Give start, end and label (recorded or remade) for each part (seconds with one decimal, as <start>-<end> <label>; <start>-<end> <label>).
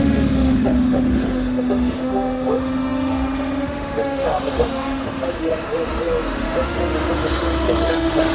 0.0-8.3 remade